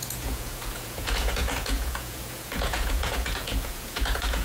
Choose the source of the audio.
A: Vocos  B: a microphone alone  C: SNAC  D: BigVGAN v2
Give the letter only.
A